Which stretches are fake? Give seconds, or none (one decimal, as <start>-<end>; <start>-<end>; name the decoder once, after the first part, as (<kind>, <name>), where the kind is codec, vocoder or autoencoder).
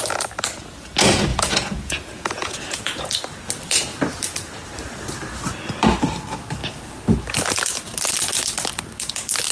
1.3-3.1 (vocoder, Vocos)